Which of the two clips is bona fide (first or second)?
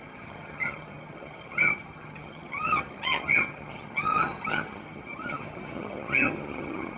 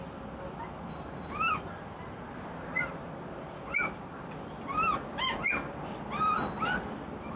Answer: second